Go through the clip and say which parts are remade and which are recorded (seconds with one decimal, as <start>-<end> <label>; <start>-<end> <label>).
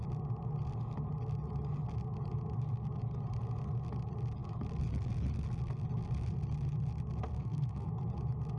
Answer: 0.0-7.3 recorded; 7.3-7.9 remade; 7.9-8.6 recorded